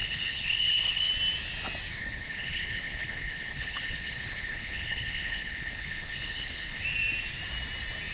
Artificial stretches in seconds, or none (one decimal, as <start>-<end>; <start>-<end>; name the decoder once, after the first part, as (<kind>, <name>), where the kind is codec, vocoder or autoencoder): 0.0-1.1 (codec, HILCodec); 2.0-6.8